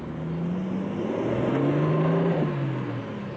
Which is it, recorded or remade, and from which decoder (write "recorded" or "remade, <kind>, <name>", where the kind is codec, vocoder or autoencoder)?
recorded